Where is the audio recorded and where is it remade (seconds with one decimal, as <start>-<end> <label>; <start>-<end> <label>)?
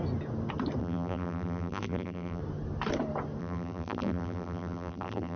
0.0-0.8 recorded; 0.8-2.4 remade; 2.4-3.4 recorded; 3.4-5.4 remade